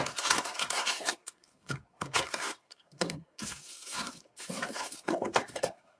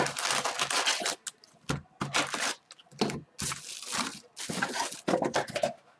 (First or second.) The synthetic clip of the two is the first